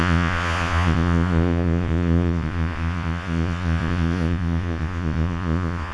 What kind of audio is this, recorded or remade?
remade